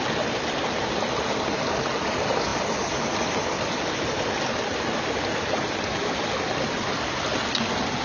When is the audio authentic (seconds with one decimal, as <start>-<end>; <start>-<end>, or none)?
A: 0.0-8.0